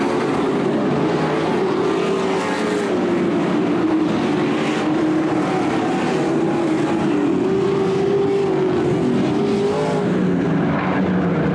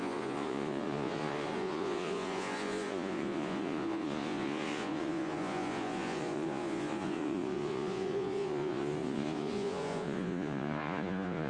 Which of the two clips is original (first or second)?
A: first